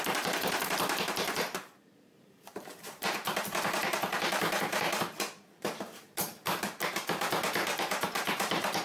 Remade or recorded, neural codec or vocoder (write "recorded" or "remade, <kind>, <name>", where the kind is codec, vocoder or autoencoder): remade, vocoder, BigVGAN v2